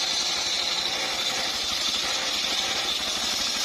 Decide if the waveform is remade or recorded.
recorded